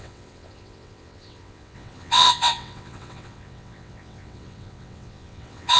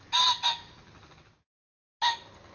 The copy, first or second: first